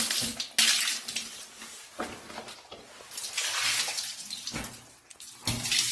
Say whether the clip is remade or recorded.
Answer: recorded